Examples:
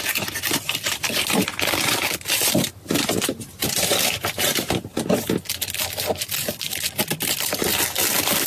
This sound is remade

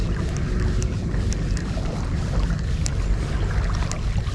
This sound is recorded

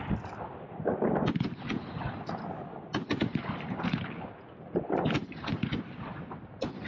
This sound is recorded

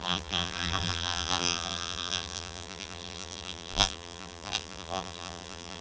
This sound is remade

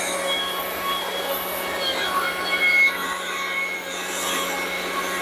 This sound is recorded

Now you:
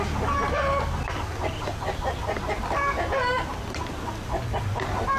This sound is recorded